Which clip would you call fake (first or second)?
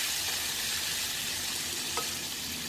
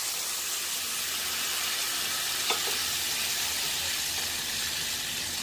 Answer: first